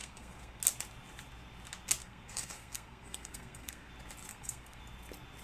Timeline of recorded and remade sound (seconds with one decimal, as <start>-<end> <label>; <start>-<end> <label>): 0.0-0.6 remade; 0.6-2.0 recorded; 2.0-3.9 remade; 3.9-4.3 recorded; 4.3-4.8 remade; 4.8-5.4 recorded